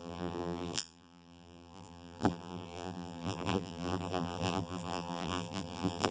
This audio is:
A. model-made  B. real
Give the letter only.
A